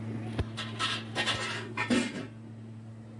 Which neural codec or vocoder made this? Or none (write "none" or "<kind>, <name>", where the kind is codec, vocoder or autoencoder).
none